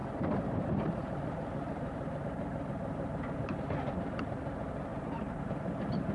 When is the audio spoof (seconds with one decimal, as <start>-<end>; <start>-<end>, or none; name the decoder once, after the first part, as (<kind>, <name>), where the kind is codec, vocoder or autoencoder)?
0.0-4.9 (vocoder, BigVGAN v2)